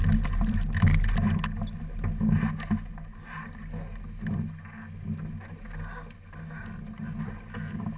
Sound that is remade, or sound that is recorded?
recorded